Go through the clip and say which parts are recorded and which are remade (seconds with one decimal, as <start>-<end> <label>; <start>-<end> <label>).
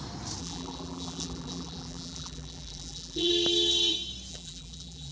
0.0-0.4 recorded; 0.4-3.3 remade; 3.3-4.3 recorded; 4.3-5.1 remade